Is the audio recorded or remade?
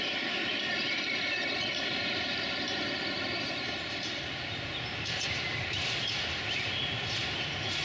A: remade